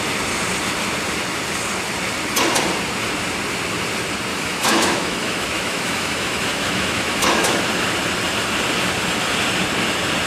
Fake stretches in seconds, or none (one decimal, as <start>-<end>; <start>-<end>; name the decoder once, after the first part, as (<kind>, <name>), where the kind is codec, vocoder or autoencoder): 4.3-7.6 (autoencoder, DAC-VAE)